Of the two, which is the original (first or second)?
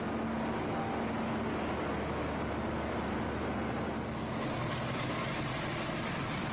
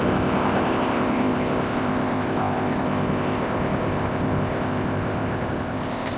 first